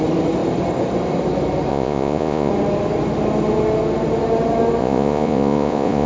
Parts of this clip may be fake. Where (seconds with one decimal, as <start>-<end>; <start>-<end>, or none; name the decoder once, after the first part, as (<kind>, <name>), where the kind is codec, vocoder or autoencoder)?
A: 1.7-2.5 (vocoder, Vocos); 4.8-6.1